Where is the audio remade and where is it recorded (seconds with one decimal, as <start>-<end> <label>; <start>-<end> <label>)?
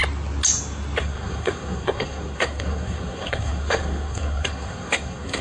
0.0-1.0 recorded; 1.0-5.4 remade